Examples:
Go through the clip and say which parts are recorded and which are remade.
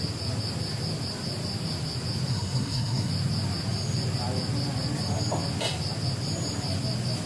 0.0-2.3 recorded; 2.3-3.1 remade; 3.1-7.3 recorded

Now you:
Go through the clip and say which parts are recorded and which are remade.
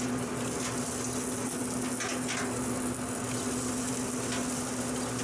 0.0-5.2 recorded